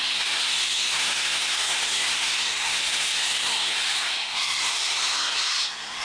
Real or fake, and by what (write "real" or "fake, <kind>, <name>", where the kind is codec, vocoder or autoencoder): fake, codec, SNAC